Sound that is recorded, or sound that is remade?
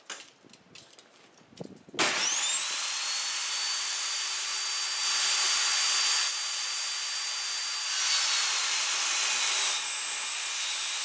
recorded